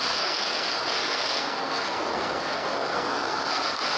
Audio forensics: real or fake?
fake